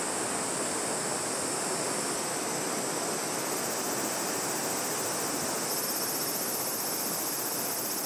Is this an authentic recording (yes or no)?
yes